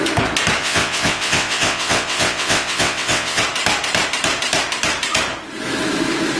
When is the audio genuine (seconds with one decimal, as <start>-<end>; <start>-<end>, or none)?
0.0-0.6; 3.4-6.4